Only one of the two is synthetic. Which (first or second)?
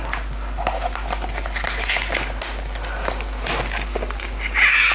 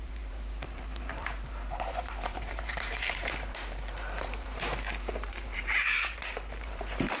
second